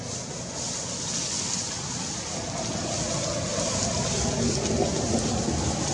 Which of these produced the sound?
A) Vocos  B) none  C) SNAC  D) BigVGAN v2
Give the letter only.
B